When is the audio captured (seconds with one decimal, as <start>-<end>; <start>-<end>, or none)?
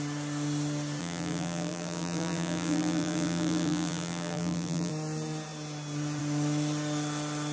0.0-1.0; 4.9-7.5